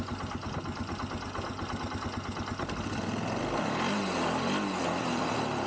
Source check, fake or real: real